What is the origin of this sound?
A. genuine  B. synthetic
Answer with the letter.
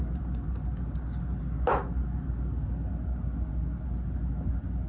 A